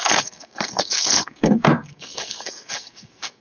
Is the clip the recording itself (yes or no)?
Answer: no